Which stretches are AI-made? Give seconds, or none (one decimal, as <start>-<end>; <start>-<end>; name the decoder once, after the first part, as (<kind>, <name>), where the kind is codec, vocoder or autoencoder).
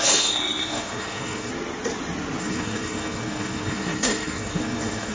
0.0-1.5 (codec, SNAC); 2.4-5.1